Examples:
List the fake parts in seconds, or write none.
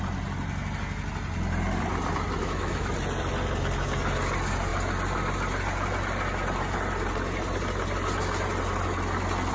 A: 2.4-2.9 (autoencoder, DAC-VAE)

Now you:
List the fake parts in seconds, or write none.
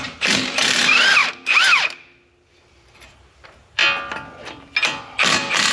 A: 0.0-1.2 (vocoder, BigVGAN v2); 2.7-3.8; 5.0-5.7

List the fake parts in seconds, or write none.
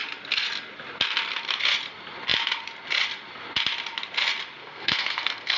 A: 4.6-5.6 (codec, SNAC)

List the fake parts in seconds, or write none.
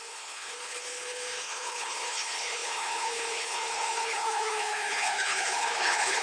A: 0.0-6.2 (codec, HILCodec)